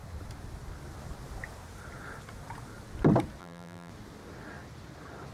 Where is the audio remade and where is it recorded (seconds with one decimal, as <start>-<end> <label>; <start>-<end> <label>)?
0.0-3.4 recorded; 3.4-3.9 remade; 3.9-5.3 recorded